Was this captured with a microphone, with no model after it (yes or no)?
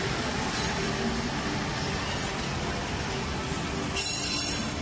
yes